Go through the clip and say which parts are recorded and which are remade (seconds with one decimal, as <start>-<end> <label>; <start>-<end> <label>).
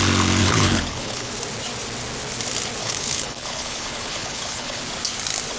0.0-0.4 recorded; 0.4-1.3 remade; 1.3-2.8 recorded; 2.8-4.8 remade; 4.8-5.6 recorded